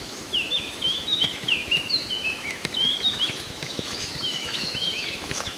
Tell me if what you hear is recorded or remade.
remade